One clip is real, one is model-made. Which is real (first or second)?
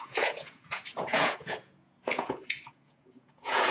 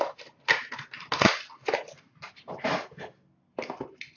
second